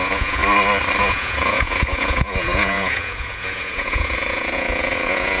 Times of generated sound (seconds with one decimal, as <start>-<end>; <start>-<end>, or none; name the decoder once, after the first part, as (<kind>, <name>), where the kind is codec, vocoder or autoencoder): 0.0-0.4 (vocoder, Vocos); 1.0-5.4